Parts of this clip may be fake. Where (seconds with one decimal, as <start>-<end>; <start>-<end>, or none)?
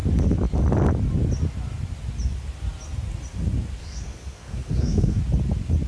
3.8-5.2